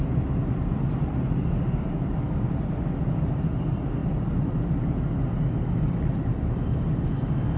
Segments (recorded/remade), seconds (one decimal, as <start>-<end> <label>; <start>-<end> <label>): 0.0-7.6 recorded